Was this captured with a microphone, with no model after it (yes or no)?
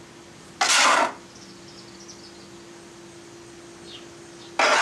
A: yes